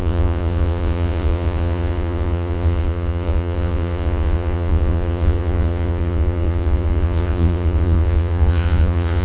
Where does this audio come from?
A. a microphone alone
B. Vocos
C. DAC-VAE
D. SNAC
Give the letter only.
B